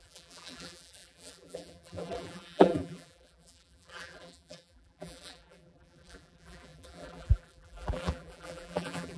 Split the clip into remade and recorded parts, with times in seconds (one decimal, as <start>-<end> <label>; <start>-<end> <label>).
0.0-9.2 remade